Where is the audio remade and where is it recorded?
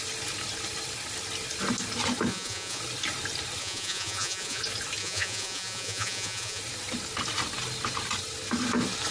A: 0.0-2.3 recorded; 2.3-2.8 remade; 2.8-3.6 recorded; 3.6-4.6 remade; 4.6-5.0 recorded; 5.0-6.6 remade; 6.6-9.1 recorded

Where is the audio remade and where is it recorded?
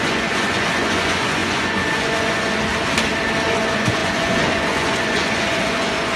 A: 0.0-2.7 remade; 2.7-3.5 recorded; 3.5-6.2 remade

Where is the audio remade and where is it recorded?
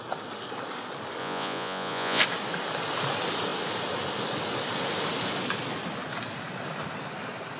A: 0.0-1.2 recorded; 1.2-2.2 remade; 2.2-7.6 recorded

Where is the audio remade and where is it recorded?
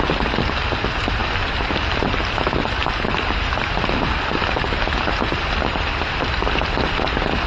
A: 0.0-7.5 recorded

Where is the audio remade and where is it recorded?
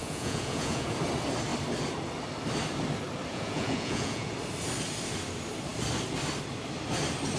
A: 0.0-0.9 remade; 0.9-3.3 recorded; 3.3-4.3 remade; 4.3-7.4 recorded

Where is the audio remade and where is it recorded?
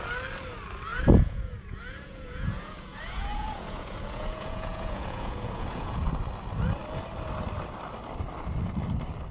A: 0.0-0.9 recorded; 0.9-6.1 remade; 6.1-9.3 recorded